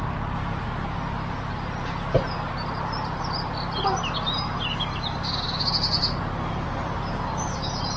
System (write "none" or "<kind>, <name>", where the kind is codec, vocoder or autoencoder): none